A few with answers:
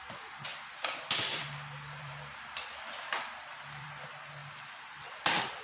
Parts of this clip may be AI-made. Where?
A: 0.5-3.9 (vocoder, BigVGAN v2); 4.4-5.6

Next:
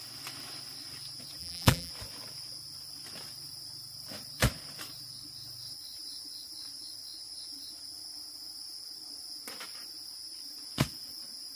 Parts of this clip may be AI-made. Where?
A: 1.4-1.9 (vocoder, BigVGAN v2)

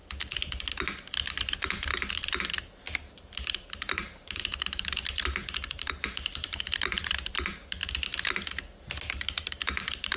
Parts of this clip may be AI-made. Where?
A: 1.4-1.9 (vocoder, BigVGAN v2); 3.5-5.0; 5.6-7.8; 9.0-10.2

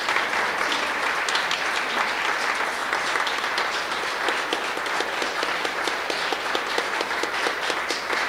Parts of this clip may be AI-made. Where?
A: 2.8-7.8 (vocoder, BigVGAN v2)

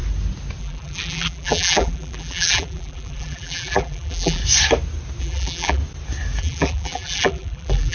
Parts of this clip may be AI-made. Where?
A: 0.6-4.4 (vocoder, BigVGAN v2); 5.2-5.8; 6.4-7.9

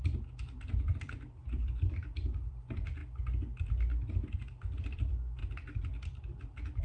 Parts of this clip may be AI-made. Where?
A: 0.0-3.0 (vocoder, BigVGAN v2); 4.8-5.4

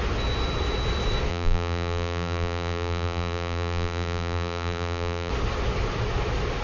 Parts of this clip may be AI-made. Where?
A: 1.3-5.3 (vocoder, BigVGAN v2)

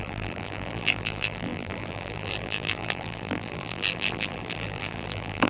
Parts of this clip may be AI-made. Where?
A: 0.0-5.5 (vocoder, BigVGAN v2)